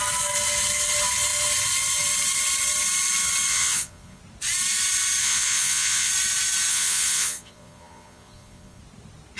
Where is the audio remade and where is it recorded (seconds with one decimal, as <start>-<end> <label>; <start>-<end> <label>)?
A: 0.0-3.5 recorded; 3.5-4.2 remade; 4.2-5.2 recorded; 5.2-6.1 remade; 6.1-6.7 recorded; 6.7-8.8 remade; 8.8-9.4 recorded